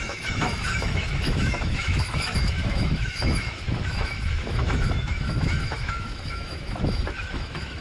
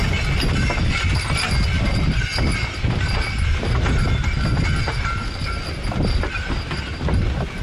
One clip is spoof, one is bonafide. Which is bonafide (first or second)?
second